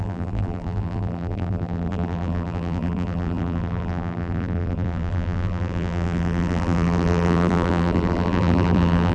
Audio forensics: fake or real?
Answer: fake